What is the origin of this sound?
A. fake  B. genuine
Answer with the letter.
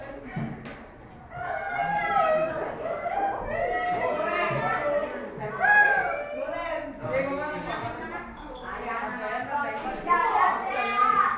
B